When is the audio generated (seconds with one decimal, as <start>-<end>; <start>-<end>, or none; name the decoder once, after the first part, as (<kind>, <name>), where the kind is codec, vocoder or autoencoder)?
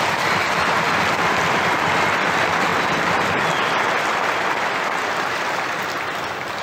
none